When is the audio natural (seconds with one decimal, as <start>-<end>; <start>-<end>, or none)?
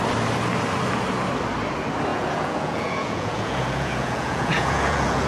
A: 0.0-2.1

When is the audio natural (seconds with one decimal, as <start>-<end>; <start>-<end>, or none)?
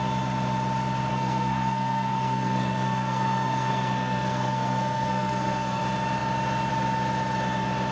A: 0.0-1.1; 5.8-7.9